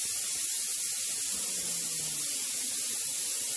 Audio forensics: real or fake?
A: real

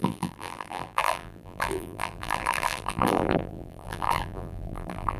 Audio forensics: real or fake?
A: fake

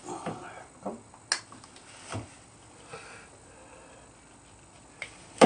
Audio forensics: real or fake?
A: real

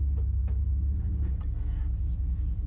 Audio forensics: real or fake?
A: real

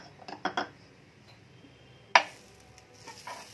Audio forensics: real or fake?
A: real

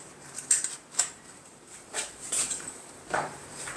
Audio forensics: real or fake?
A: fake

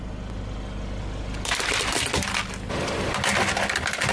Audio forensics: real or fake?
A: real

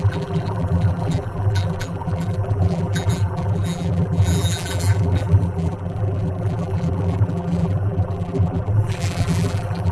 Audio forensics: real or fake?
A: fake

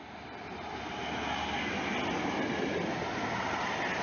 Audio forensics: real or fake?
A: real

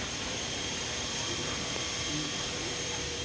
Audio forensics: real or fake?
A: fake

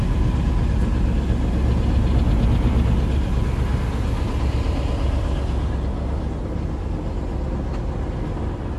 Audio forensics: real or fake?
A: real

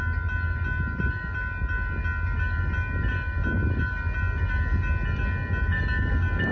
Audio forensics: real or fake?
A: real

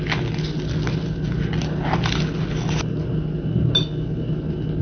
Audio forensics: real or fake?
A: real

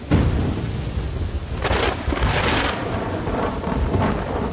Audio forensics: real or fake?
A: real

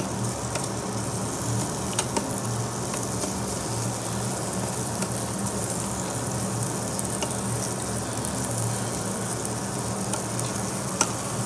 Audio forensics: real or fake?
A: real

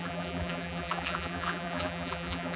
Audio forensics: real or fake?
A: fake